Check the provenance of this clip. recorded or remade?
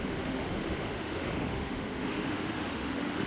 remade